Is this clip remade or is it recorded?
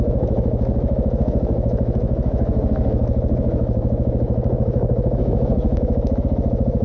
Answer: remade